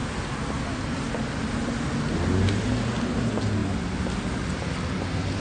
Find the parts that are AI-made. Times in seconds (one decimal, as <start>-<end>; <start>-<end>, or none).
none